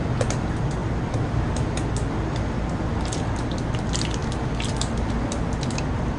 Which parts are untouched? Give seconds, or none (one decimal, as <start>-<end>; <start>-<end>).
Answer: 0.0-6.2